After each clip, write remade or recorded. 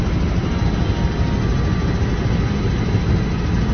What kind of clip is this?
recorded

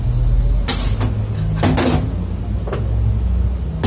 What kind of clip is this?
recorded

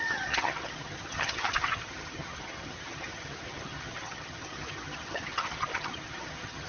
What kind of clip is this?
remade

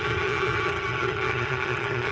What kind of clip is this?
remade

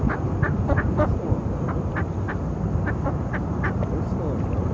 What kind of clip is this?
recorded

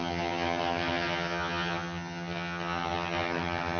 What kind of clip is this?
remade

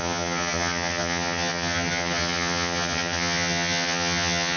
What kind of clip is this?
remade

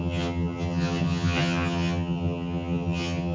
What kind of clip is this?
remade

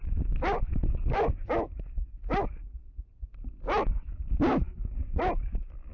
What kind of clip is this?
recorded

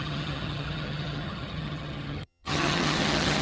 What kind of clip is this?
remade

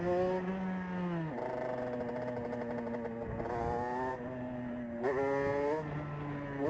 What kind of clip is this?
recorded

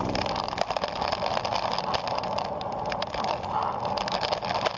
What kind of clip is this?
recorded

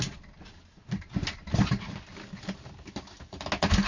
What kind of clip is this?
recorded